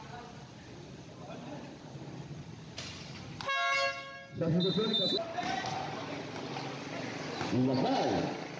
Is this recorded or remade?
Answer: recorded